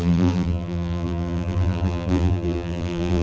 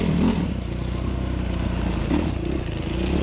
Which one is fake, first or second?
first